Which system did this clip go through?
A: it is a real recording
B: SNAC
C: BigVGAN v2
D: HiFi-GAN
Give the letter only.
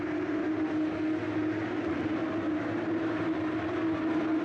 A